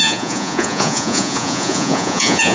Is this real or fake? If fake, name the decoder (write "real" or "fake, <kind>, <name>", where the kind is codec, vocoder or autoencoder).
fake, vocoder, Vocos